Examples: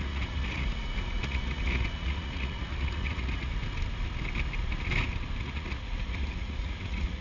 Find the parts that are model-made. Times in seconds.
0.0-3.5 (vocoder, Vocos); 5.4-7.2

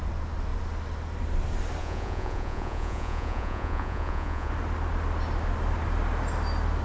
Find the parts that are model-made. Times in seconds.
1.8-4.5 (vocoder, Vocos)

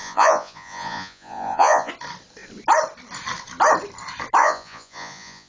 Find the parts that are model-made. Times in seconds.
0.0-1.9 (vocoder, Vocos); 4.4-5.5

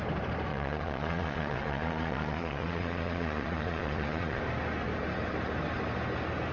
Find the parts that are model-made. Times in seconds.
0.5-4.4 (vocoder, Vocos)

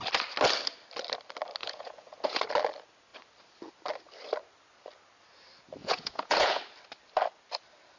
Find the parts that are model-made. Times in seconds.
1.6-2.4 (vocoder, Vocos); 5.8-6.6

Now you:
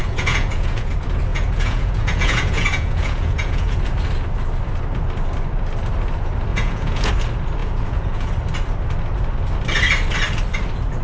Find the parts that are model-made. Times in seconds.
0.0-0.9 (vocoder, Vocos); 1.3-3.8; 6.5-7.1; 7.6-8.3

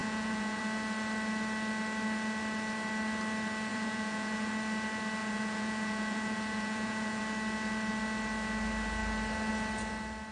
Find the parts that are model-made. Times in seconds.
0.0-0.6 (vocoder, Vocos); 3.7-4.5; 5.2-7.2